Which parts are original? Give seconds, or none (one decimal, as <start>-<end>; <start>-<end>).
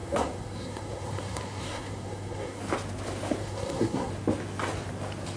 2.6-3.4; 4.1-5.4